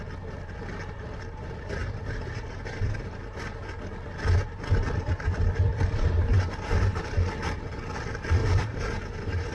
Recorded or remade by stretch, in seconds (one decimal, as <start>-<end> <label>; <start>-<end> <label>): 0.0-1.8 recorded; 1.8-3.7 remade; 3.7-5.7 recorded; 5.7-7.0 remade; 7.0-8.4 recorded; 8.4-9.5 remade